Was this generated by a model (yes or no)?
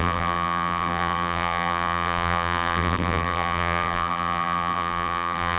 yes